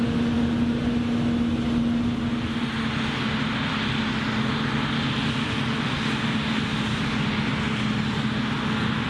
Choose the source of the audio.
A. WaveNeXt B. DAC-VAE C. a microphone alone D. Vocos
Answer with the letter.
C